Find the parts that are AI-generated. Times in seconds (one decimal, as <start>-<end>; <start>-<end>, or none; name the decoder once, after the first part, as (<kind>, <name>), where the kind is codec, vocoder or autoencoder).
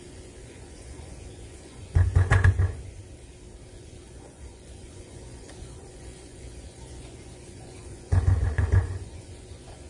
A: 0.0-3.0 (vocoder, Vocos); 3.7-9.9